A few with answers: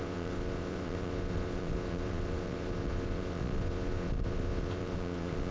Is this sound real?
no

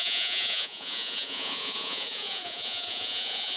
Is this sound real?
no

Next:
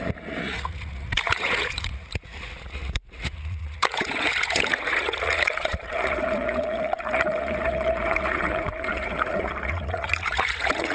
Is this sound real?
no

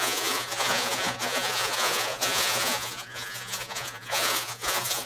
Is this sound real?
no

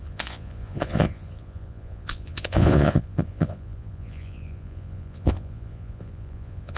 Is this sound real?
no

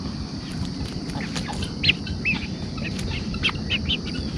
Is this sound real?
yes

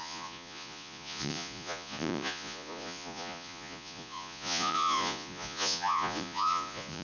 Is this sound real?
no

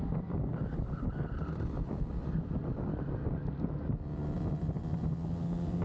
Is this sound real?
yes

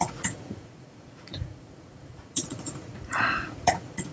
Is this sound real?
no